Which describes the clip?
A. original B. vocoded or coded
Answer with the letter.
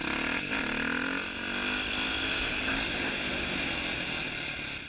A